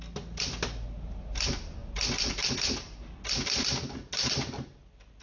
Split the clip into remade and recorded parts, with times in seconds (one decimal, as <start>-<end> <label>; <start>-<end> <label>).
0.0-5.2 recorded

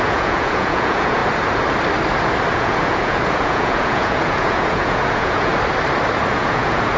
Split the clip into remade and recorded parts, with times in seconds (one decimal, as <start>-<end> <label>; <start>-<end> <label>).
0.0-1.2 remade; 1.2-2.5 recorded; 2.5-5.5 remade; 5.5-6.3 recorded; 6.3-7.0 remade

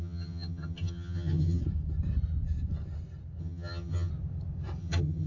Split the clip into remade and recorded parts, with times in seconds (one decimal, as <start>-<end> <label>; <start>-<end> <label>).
0.0-1.6 remade; 1.6-3.4 recorded; 3.4-4.1 remade; 4.1-4.8 recorded; 4.8-5.3 remade

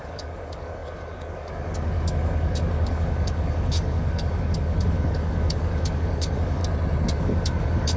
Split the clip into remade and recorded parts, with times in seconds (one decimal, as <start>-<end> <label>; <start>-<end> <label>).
0.0-6.6 remade; 6.6-7.2 recorded; 7.2-8.0 remade

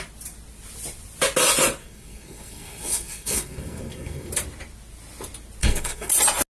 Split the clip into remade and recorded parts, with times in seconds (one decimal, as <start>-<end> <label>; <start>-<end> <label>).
0.0-1.8 recorded; 1.8-4.3 remade; 4.3-5.6 recorded; 5.6-6.1 remade; 6.1-6.5 recorded

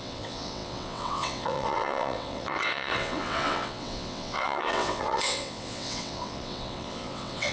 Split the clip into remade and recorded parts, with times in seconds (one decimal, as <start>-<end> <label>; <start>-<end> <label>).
0.0-7.5 remade